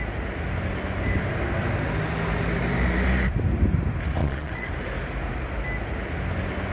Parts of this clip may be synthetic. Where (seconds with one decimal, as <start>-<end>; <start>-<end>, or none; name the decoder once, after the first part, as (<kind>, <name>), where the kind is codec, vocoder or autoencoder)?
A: 4.2-4.7 (vocoder, Vocos)